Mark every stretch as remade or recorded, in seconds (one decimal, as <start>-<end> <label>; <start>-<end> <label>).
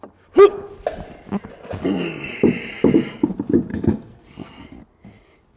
0.0-3.7 recorded; 3.7-4.6 remade; 4.6-5.6 recorded